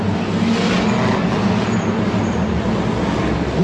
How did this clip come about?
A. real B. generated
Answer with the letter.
A